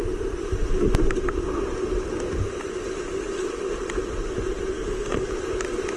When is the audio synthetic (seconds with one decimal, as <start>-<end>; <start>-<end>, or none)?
4.7-5.3